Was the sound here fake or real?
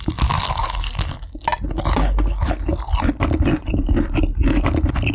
real